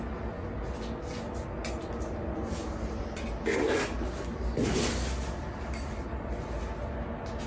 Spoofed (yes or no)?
no